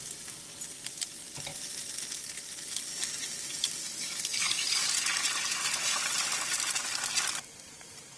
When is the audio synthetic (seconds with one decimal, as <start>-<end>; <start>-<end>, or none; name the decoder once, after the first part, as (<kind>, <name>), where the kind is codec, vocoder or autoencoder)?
3.8-4.6 (codec, DAC)